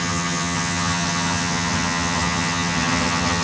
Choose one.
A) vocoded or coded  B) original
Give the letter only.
A